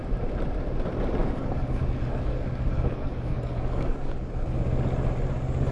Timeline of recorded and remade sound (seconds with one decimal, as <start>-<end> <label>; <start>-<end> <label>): 0.0-1.2 recorded; 1.2-4.6 remade; 4.6-5.7 recorded